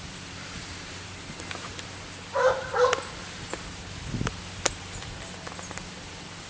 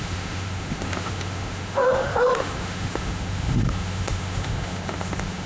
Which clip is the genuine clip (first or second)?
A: first